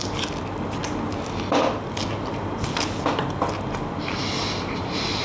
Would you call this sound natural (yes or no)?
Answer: yes